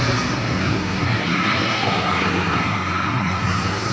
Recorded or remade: remade